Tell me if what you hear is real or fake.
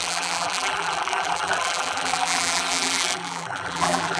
fake